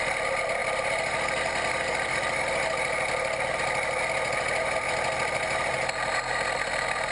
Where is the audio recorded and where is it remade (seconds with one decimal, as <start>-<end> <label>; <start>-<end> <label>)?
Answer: 0.0-7.1 recorded